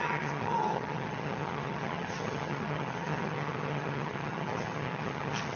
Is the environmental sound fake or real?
fake